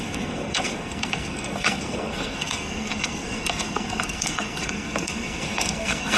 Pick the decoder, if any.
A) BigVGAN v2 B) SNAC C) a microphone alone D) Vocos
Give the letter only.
B